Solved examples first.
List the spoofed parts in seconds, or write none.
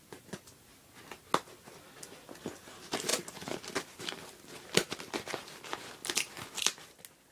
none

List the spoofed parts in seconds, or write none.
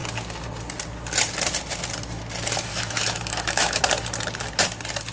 2.7-3.8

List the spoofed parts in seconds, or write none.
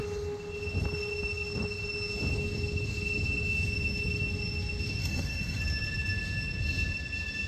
5.0-5.6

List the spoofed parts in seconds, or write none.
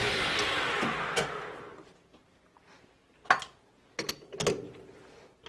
none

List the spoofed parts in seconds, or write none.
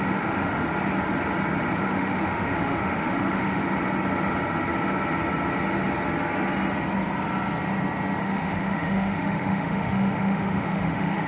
0.0-0.6; 1.7-3.6; 8.2-11.3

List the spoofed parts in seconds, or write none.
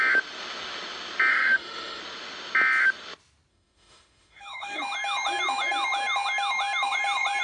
1.3-2.0; 3.5-4.8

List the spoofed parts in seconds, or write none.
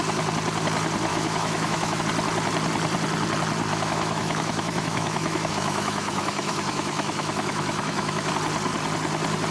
1.1-2.0; 3.7-8.3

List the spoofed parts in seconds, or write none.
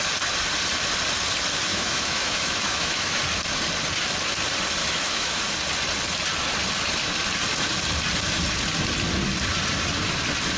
1.7-3.2; 4.8-5.4